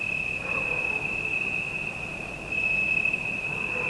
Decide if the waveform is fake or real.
real